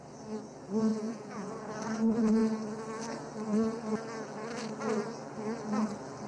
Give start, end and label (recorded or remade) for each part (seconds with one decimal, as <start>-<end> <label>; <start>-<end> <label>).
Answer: 0.0-0.9 recorded; 0.9-1.7 remade; 1.7-6.3 recorded